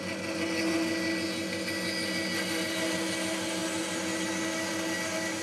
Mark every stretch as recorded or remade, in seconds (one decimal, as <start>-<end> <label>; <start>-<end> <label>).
0.0-5.4 recorded